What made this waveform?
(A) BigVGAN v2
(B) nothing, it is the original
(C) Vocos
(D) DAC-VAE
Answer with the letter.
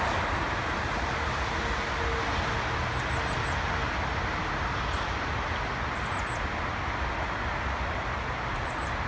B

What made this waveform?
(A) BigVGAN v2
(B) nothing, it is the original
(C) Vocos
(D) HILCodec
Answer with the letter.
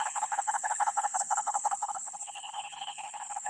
D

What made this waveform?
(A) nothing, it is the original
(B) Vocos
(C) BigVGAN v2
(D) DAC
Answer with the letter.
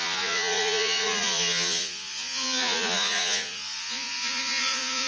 B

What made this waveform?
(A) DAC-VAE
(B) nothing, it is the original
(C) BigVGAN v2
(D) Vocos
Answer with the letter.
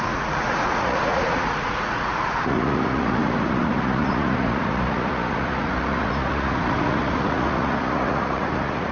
D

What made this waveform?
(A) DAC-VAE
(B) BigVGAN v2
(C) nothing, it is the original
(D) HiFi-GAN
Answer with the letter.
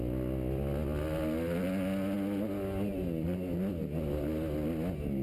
C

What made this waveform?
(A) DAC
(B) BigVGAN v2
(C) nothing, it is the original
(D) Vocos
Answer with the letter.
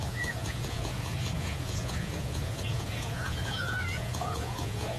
D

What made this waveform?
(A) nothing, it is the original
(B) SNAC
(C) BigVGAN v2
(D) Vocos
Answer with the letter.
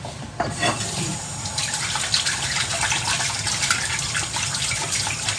C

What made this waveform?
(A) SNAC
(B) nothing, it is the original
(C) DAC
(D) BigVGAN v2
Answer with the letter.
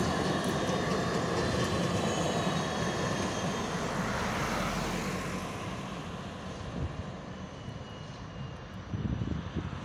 B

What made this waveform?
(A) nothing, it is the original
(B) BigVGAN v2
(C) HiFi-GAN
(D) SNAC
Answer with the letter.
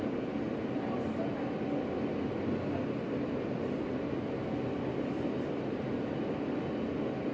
A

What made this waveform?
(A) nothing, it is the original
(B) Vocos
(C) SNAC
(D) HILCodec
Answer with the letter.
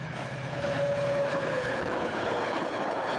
D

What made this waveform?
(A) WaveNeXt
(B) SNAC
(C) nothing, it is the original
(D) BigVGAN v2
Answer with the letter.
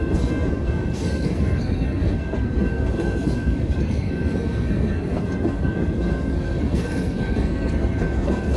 B